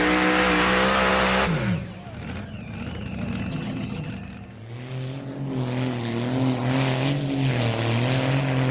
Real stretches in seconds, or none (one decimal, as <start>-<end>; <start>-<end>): 0.0-3.5; 4.1-8.7